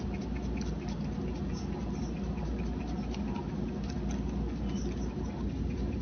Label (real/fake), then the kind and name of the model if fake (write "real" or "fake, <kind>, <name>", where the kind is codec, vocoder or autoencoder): real